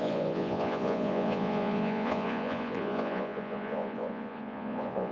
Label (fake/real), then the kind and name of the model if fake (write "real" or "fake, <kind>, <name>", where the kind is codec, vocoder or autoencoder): fake, vocoder, Vocos